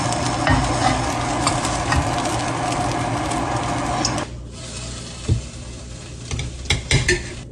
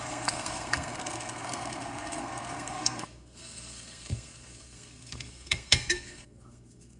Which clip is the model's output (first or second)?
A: second